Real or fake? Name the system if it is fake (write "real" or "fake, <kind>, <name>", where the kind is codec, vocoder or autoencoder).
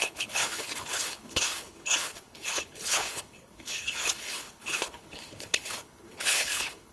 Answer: fake, codec, HILCodec